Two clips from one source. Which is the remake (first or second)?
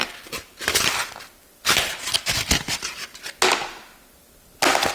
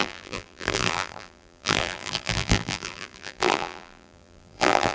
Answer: second